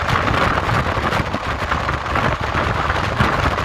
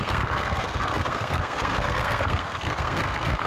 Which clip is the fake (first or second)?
second